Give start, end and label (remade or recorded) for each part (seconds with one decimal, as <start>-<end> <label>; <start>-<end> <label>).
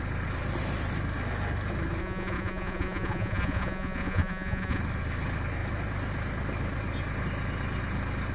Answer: 0.0-2.0 recorded; 2.0-4.8 remade; 4.8-8.3 recorded